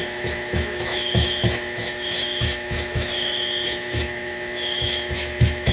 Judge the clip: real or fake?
fake